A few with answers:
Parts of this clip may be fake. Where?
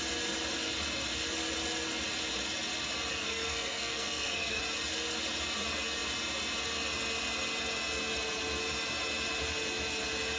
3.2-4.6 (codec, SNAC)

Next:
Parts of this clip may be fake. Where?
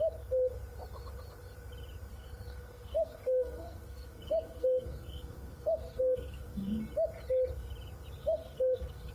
2.1-6.7 (codec, SNAC); 8.2-9.1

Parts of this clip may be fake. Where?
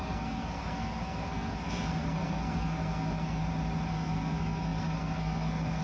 0.0-3.4 (codec, SNAC); 3.9-5.8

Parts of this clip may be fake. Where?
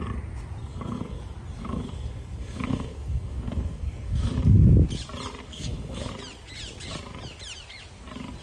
0.6-1.2 (codec, SNAC); 1.6-4.4; 5.4-6.1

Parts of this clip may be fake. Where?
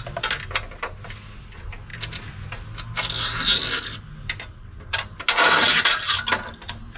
none